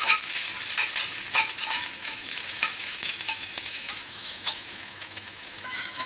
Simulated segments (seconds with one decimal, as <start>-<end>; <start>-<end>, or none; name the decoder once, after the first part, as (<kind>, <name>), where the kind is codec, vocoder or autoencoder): 0.0-0.5 (autoencoder, DAC-VAE); 1.3-6.1